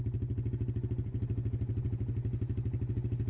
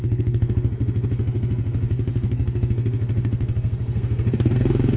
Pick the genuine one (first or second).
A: first